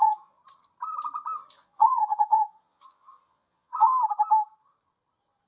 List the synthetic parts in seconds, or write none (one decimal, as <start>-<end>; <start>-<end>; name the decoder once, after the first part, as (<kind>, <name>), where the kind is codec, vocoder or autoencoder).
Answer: 0.0-0.4 (vocoder, Vocos); 1.5-3.9